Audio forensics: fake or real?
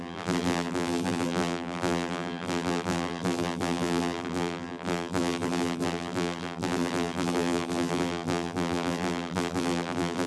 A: fake